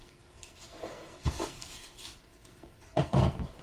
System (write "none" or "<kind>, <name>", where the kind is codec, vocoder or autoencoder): codec, SNAC